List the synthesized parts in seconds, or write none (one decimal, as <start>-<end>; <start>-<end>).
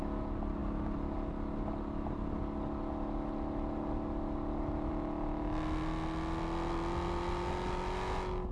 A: none